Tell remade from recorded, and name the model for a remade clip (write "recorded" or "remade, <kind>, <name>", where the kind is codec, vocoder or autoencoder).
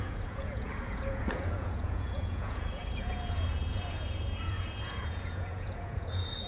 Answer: remade, vocoder, Vocos